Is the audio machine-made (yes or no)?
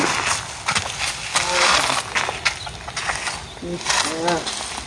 no